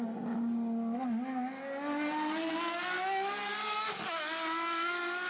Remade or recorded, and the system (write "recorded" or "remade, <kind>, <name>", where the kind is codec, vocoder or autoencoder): recorded